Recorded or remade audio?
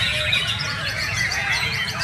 remade